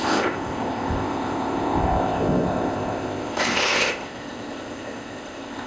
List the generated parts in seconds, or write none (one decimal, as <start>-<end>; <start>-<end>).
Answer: 0.0-5.7